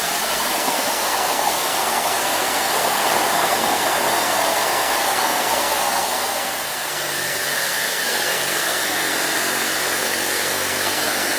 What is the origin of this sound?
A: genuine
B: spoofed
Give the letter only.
B